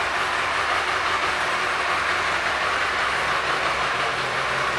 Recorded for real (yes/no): yes